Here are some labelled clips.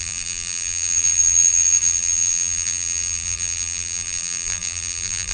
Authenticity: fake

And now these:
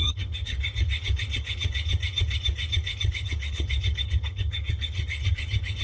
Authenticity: fake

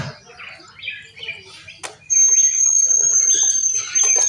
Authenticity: real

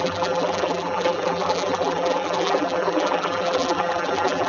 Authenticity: fake